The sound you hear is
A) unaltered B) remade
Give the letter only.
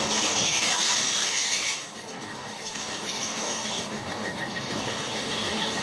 B